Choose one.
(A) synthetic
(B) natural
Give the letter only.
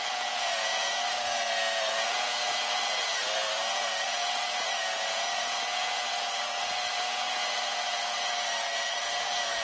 A